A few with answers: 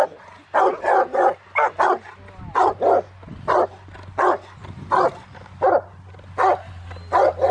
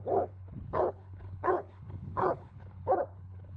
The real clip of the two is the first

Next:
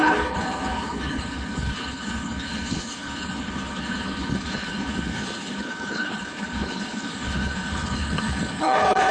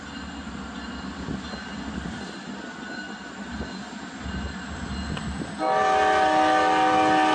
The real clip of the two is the second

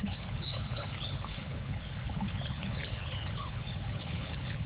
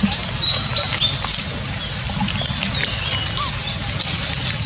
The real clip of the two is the second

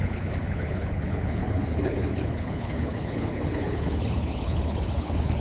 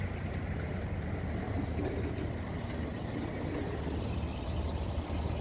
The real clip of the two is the second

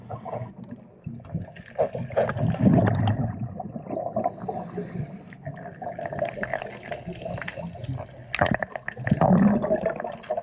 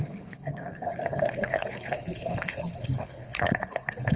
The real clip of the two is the first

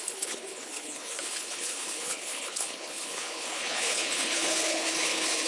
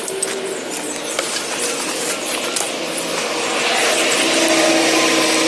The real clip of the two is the second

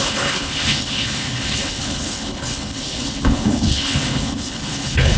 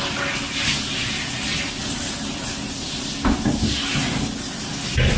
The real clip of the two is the second